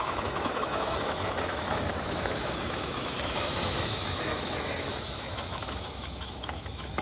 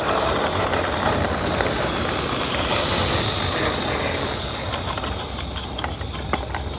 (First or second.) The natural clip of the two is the second